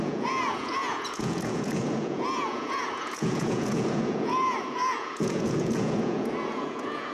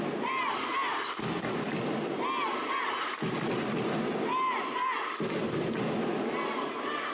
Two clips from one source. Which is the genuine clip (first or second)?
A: second